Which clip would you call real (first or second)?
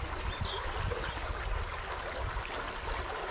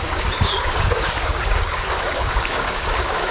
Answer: first